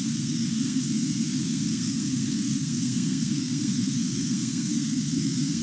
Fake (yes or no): yes